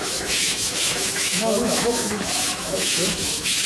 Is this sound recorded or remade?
remade